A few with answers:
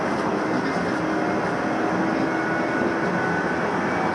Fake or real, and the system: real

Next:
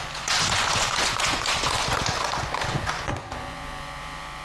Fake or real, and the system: fake, vocoder, Vocos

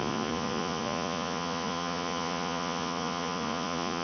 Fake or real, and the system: fake, vocoder, Vocos